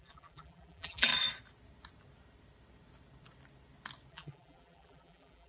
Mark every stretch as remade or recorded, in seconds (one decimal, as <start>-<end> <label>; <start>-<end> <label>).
0.0-1.1 remade; 1.1-4.1 recorded; 4.1-5.5 remade